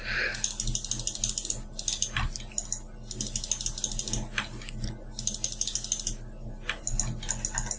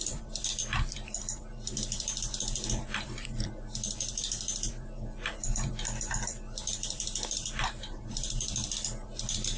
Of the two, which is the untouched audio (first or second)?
first